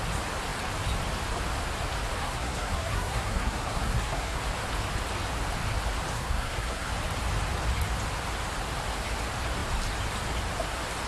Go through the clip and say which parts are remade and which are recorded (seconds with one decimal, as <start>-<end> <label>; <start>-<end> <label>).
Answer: 0.0-2.2 recorded; 2.2-4.4 remade; 4.4-6.1 recorded; 6.1-6.9 remade; 6.9-11.1 recorded